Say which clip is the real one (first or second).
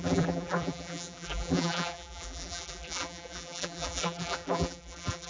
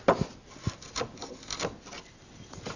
second